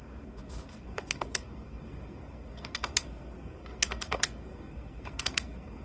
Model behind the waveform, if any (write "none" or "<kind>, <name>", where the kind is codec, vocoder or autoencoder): codec, SNAC